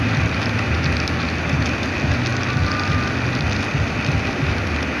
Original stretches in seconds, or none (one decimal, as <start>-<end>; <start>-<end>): 0.0-5.0